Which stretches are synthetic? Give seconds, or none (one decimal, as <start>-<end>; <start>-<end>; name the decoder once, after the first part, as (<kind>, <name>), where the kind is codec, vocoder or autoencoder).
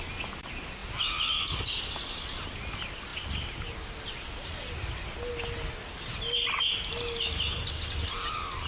none